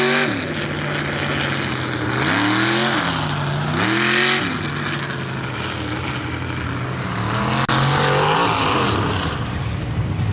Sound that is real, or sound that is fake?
real